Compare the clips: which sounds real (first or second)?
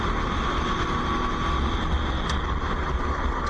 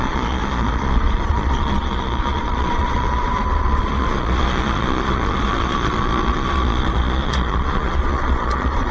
first